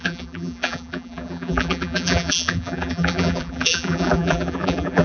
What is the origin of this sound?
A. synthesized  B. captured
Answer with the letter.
A